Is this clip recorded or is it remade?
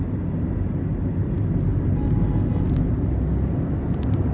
recorded